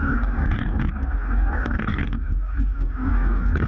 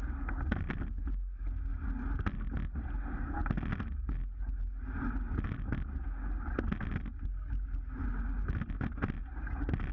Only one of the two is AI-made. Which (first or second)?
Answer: first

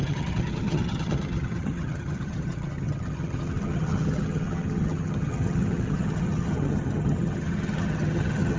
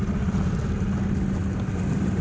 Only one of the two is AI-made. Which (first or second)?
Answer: first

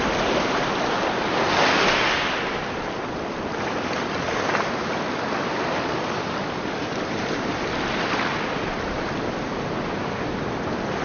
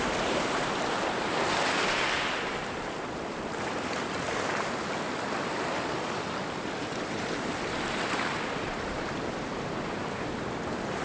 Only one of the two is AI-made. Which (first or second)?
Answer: second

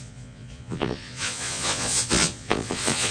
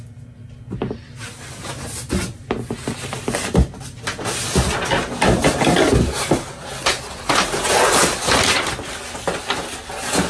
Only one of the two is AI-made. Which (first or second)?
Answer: first